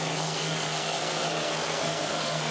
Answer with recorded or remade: remade